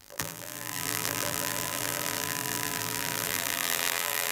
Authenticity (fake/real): fake